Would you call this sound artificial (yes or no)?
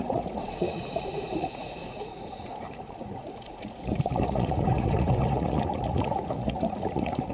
yes